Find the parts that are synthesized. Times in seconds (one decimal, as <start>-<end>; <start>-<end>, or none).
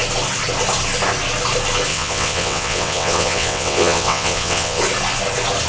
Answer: 1.9-4.8